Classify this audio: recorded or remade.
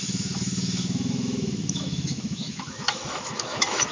remade